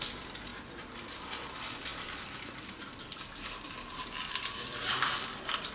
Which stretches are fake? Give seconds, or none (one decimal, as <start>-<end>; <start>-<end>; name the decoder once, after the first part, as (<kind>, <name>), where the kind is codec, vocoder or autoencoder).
0.5-1.2 (vocoder, BigVGAN v2); 1.9-5.3